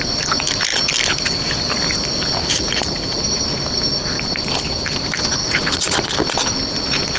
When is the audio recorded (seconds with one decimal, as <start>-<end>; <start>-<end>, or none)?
0.0-2.4; 3.2-5.4; 6.1-7.2